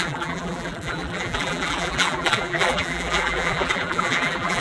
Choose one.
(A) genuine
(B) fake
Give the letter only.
B